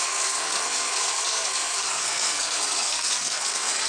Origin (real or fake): fake